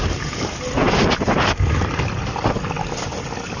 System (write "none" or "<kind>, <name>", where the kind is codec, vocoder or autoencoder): none